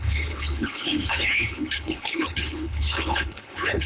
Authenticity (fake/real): fake